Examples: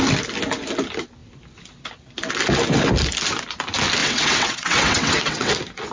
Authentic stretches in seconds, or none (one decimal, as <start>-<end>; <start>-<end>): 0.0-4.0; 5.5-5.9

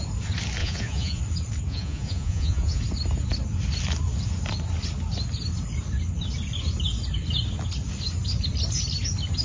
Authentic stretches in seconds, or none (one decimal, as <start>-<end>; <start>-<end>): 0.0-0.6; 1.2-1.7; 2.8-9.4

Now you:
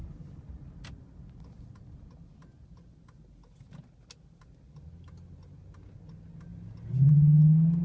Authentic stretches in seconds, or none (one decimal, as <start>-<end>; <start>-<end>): 0.0-7.8